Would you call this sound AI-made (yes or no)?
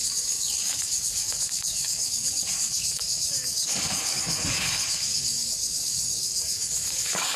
yes